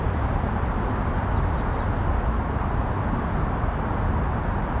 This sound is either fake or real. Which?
real